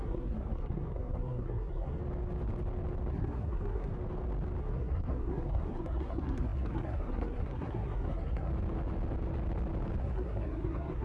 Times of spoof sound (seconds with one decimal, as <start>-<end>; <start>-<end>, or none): 0.0-2.0; 3.1-3.9; 4.6-8.5; 10.0-11.0